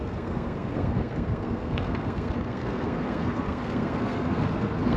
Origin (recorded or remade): remade